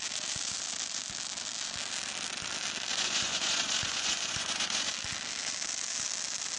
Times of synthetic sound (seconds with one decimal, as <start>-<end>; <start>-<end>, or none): 2.9-4.9